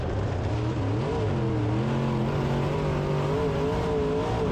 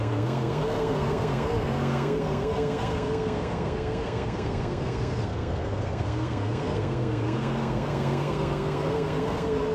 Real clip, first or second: first